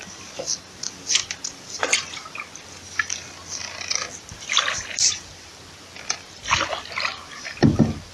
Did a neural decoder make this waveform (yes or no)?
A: no